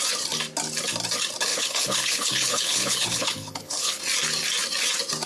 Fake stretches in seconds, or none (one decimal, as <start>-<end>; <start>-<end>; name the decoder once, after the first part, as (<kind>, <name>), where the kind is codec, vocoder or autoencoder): 1.5-4.0 (codec, HILCodec)